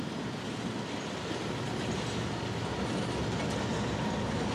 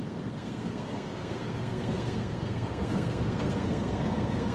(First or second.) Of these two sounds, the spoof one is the second